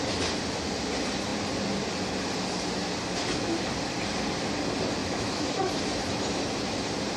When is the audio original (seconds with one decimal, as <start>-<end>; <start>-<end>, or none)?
0.0-5.0; 5.7-7.2

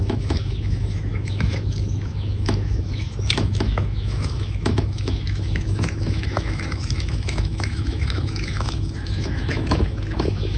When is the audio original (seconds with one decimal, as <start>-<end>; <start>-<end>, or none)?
none

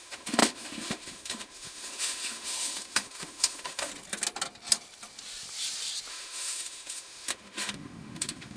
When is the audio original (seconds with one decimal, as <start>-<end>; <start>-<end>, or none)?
3.9-6.1

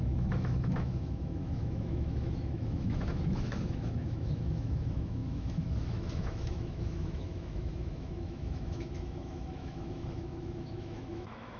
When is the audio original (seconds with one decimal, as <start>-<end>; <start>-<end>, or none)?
none

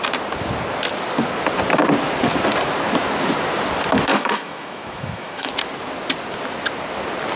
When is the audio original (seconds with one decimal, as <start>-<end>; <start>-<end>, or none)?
0.0-4.1; 5.5-7.4